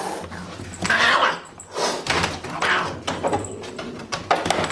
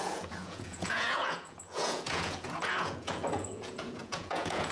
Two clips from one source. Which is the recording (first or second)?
first